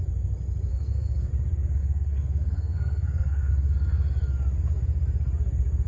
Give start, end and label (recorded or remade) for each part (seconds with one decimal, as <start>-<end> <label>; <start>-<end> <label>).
0.0-0.7 recorded; 0.7-1.3 remade; 1.3-1.8 recorded; 1.8-3.5 remade; 3.5-5.9 recorded